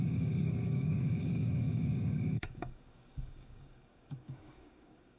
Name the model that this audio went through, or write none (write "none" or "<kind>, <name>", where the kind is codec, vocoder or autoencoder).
codec, DAC